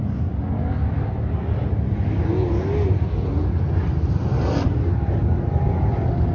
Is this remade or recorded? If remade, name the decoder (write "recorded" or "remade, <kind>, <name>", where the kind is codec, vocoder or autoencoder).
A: recorded